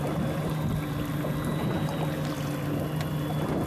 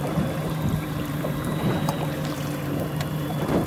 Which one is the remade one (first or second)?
second